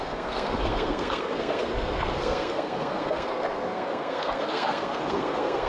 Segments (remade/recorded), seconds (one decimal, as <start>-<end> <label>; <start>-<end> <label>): 0.0-5.7 remade

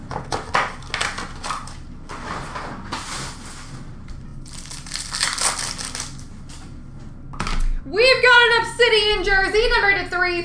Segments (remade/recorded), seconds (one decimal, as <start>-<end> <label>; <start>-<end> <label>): 0.0-10.4 recorded

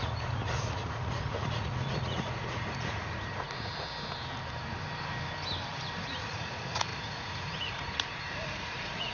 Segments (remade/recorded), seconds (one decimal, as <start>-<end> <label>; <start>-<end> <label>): 0.0-3.7 remade; 3.7-6.0 recorded; 6.0-9.1 remade

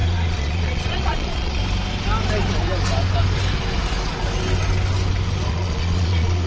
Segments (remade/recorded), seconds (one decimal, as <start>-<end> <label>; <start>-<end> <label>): 0.0-1.6 remade; 1.6-5.5 recorded; 5.5-6.5 remade

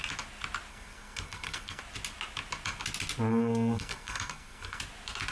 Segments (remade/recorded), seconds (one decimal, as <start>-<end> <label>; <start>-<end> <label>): 0.0-0.7 recorded; 0.7-1.8 remade; 1.8-3.3 recorded; 3.3-4.8 remade; 4.8-5.3 recorded

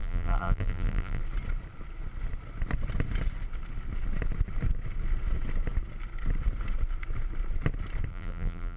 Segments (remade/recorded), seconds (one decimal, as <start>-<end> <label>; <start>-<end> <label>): 0.0-1.2 remade; 1.2-8.1 recorded; 8.1-8.8 remade

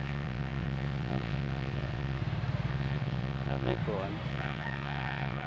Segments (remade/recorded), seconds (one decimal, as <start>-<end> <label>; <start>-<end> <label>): 0.0-2.2 remade; 2.2-2.7 recorded; 2.7-3.8 remade; 3.8-4.3 recorded; 4.3-5.5 remade